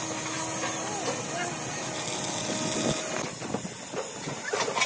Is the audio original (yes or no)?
yes